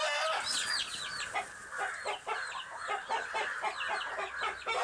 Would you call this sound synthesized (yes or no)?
no